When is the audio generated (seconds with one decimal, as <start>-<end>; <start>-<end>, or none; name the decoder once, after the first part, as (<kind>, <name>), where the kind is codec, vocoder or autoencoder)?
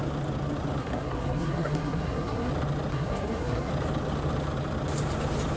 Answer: 0.8-2.5 (codec, SNAC); 2.9-3.7